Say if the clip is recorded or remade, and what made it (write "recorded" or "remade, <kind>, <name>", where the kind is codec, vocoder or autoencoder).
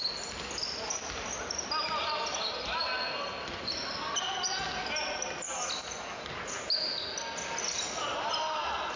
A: recorded